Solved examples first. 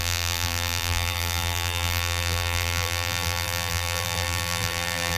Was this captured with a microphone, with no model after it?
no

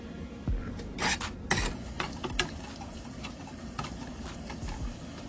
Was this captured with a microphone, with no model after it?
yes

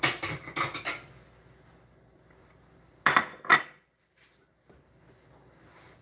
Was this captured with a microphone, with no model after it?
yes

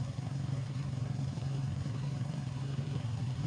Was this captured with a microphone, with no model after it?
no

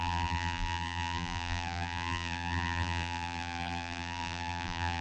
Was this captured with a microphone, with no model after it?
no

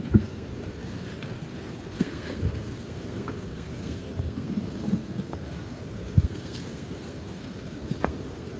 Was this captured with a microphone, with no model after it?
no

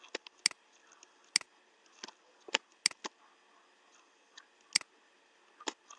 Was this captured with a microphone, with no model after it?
yes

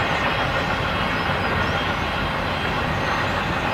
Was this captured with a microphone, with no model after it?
yes